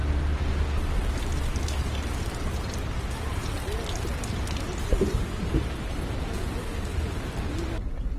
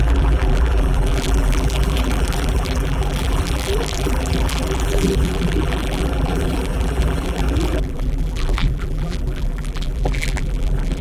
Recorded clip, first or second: first